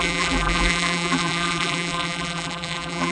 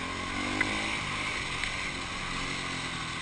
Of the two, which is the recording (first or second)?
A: second